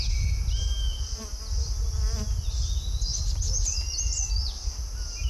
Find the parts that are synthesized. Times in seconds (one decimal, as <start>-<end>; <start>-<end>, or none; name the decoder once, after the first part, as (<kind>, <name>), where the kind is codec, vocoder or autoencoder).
none